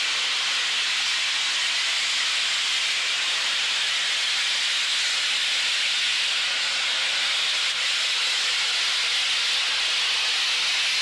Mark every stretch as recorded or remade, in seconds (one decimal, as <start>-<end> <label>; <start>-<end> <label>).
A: 0.0-11.0 recorded